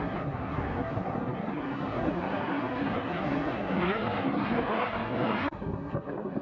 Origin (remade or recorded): remade